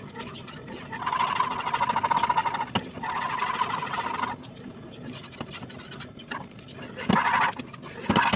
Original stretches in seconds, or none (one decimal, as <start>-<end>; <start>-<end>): 0.0-8.4

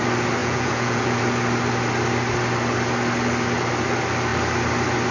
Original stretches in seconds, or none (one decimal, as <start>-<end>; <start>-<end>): 0.0-0.4; 1.2-5.1